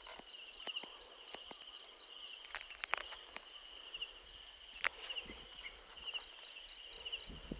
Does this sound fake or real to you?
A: real